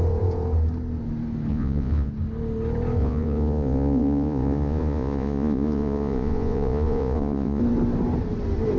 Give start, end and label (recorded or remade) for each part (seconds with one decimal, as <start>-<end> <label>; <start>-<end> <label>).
0.0-1.5 recorded; 1.5-2.1 remade; 2.1-3.0 recorded; 3.0-7.6 remade; 7.6-8.8 recorded